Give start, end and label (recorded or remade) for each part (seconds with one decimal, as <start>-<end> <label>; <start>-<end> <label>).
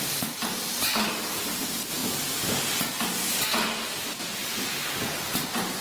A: 0.0-2.0 remade; 2.0-4.2 recorded; 4.2-5.8 remade